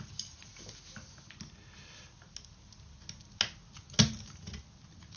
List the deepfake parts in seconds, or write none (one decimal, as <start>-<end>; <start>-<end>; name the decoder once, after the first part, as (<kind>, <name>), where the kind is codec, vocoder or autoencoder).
none